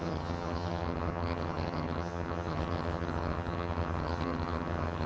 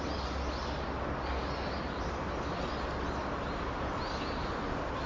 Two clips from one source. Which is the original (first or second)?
second